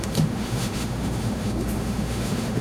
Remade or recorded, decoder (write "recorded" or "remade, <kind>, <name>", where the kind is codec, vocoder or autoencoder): remade, autoencoder, DAC-VAE